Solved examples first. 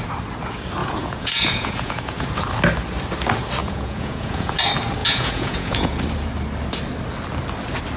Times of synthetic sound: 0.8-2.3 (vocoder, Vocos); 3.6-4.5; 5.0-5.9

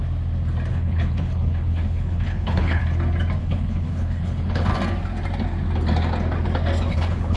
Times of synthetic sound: 0.7-2.8 (codec, HILCodec); 3.4-4.7; 6.9-7.4

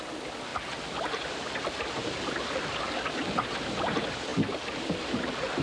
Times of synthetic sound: none

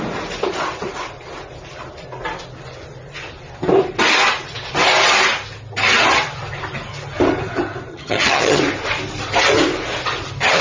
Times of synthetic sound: 7.9-8.6 (vocoder, HiFi-GAN)

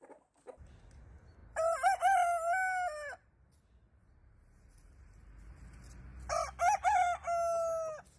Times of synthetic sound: none